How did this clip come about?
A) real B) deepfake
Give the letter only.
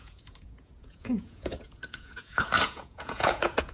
B